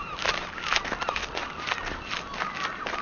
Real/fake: real